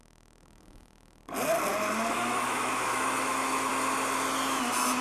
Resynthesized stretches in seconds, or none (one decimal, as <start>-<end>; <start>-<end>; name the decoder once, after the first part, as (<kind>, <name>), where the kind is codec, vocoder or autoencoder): 0.0-1.2 (autoencoder, DAC-VAE); 2.1-3.7